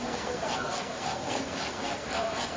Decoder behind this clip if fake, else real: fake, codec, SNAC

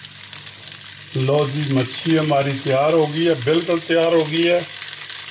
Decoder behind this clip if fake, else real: real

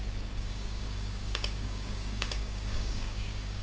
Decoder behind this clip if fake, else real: fake, codec, DAC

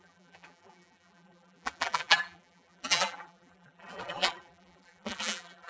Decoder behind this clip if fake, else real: fake, vocoder, BigVGAN v2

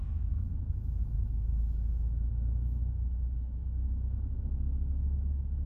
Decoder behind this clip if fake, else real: fake, autoencoder, DAC-VAE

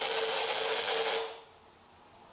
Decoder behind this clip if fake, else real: real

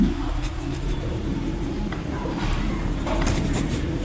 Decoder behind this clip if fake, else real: fake, vocoder, BigVGAN v2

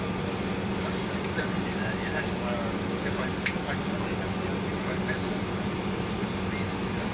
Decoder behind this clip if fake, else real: real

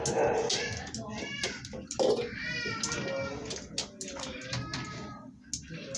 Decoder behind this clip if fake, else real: real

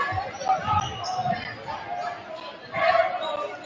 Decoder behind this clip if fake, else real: real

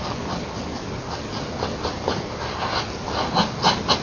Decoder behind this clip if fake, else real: real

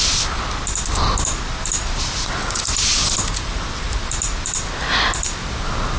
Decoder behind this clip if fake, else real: real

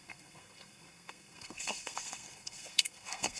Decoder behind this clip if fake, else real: fake, codec, SNAC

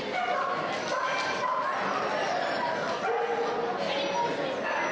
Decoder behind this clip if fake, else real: real